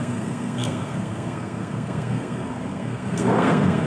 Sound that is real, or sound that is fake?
fake